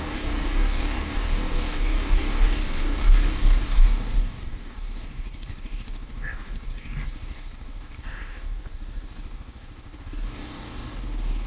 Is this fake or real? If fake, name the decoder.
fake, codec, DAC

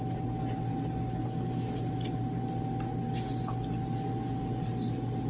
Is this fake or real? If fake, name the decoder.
real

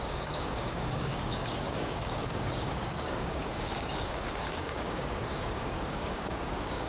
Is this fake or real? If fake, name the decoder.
fake, codec, DAC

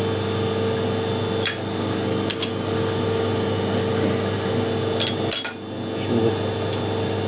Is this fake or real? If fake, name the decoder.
real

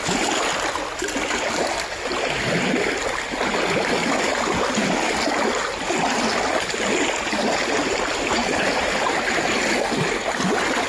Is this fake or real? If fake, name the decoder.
real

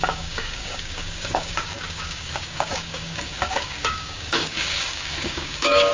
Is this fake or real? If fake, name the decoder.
fake, codec, DAC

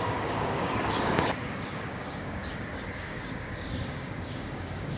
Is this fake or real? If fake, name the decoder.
fake, codec, DAC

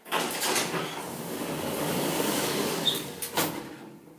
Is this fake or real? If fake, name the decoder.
fake, codec, DAC